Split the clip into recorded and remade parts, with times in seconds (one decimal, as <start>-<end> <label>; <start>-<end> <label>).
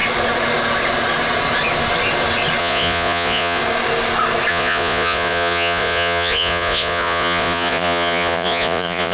0.0-2.6 recorded; 2.6-3.6 remade; 3.6-4.5 recorded; 4.5-9.1 remade